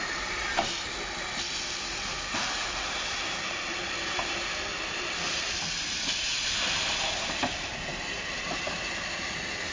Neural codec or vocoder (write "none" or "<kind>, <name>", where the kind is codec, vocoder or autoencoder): vocoder, BigVGAN v2